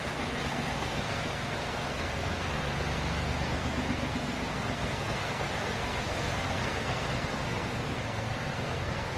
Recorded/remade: remade